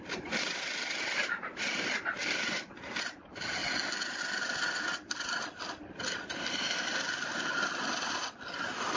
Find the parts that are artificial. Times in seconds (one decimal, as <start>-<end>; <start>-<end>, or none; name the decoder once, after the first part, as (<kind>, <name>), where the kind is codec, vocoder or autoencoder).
none